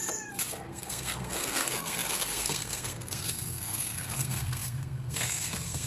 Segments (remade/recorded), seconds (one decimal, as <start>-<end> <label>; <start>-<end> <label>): 0.0-0.7 recorded; 0.7-5.9 remade